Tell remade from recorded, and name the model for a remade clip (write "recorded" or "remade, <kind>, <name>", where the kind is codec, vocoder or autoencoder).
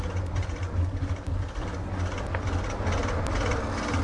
recorded